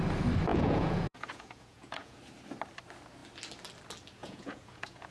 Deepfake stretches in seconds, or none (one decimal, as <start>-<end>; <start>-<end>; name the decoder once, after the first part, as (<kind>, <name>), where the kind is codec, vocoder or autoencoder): 0.5-2.2 (vocoder, Vocos); 4.2-5.1